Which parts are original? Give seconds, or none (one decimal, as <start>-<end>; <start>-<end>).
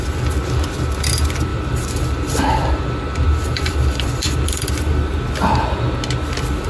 0.0-1.5; 4.7-6.7